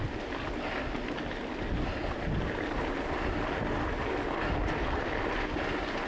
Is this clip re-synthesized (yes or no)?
no